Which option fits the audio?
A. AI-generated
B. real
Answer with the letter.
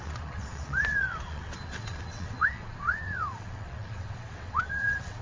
A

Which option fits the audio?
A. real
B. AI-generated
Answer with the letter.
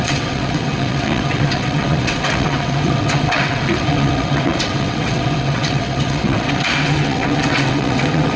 B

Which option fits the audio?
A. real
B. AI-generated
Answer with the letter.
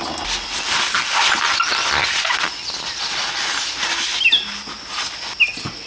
A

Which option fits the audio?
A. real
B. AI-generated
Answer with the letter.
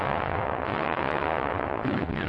B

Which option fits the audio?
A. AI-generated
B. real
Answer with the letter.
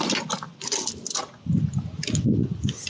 B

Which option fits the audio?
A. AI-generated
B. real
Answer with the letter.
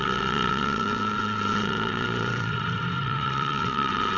A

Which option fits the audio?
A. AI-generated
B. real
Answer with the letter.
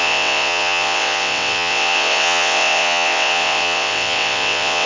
A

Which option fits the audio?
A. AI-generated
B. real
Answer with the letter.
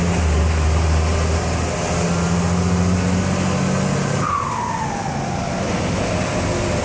B